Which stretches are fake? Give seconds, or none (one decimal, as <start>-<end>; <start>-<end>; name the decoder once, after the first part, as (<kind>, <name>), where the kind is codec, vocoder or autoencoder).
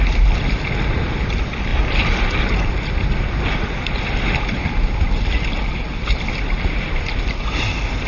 none